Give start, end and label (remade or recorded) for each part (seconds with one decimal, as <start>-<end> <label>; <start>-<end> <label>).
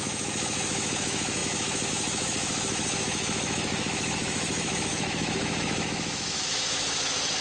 0.0-7.4 remade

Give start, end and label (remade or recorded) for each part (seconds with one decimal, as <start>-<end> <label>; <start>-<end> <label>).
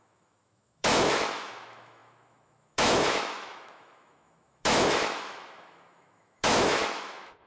0.0-7.5 remade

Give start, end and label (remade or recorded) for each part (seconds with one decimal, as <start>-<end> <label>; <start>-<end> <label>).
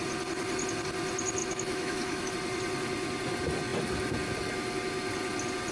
0.0-1.4 recorded; 1.4-2.3 remade; 2.3-5.7 recorded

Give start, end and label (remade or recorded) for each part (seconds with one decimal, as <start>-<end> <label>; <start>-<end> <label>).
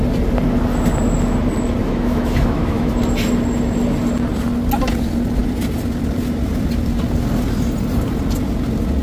0.0-1.8 recorded; 1.8-2.9 remade; 2.9-9.0 recorded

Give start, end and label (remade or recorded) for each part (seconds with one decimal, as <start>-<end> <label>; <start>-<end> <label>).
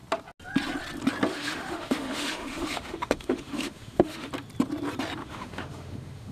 0.0-1.3 recorded; 1.3-4.3 remade; 4.3-5.2 recorded; 5.2-6.3 remade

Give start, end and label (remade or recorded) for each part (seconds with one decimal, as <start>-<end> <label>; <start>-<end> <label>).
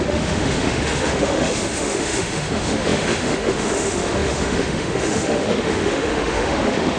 0.0-7.0 remade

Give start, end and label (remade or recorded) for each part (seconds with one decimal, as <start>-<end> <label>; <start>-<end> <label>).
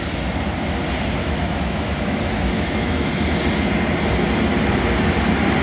0.0-1.2 recorded; 1.2-3.1 remade; 3.1-5.6 recorded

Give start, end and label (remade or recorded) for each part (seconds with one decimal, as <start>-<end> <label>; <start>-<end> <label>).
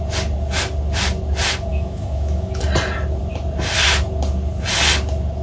0.0-1.7 recorded; 1.7-2.6 remade; 2.6-5.4 recorded